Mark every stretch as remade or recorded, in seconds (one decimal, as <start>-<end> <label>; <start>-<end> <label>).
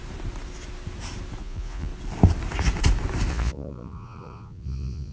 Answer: 0.0-1.4 recorded; 1.4-1.9 remade; 1.9-3.3 recorded; 3.3-5.1 remade